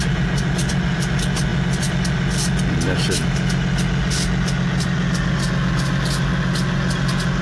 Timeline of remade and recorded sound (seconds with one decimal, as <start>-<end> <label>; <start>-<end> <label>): 0.0-7.4 recorded